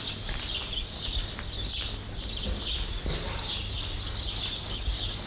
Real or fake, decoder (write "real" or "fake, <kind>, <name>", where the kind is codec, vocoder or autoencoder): real